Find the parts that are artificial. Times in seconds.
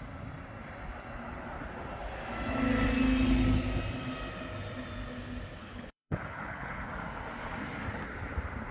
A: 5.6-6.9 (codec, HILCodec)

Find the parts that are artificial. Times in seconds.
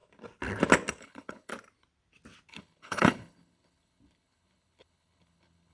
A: 1.0-1.5 (codec, HILCodec); 2.5-5.7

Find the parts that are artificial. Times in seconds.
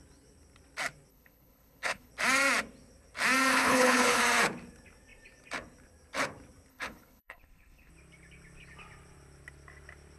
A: 1.1-2.1 (codec, HILCodec); 3.5-4.2; 6.7-7.9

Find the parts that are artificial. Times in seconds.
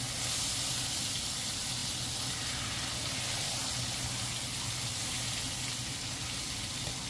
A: none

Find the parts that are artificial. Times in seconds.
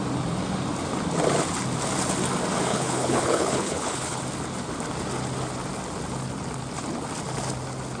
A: 2.7-4.2 (codec, HILCodec)